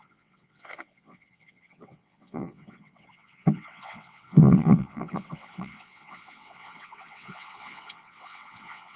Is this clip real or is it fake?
fake